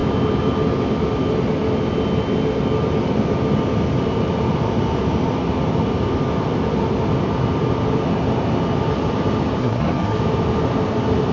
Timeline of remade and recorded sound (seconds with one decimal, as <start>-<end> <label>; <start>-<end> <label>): 0.0-9.6 recorded; 9.6-10.2 remade; 10.2-11.3 recorded